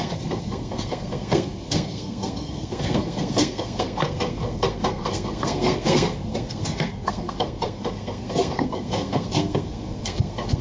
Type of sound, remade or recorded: remade